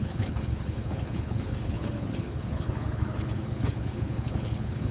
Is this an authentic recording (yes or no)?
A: no